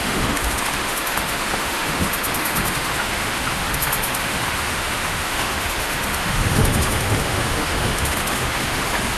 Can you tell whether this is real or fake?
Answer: fake